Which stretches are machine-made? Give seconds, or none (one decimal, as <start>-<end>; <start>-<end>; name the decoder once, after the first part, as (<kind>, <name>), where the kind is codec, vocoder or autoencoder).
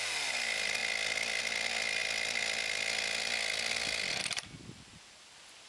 none